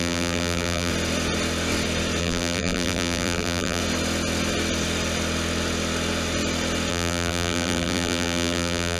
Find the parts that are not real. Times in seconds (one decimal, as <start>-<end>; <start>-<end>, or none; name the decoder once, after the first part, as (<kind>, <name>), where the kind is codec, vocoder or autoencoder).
0.0-0.9 (vocoder, BigVGAN v2); 2.2-3.8; 6.9-9.0